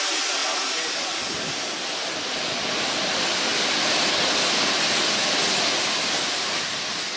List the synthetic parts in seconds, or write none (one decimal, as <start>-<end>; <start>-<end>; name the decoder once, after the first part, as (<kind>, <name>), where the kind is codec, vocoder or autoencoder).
none